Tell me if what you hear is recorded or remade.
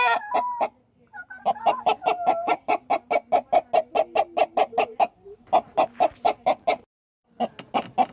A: recorded